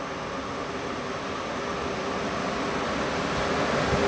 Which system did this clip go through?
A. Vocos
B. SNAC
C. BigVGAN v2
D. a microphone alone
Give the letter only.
D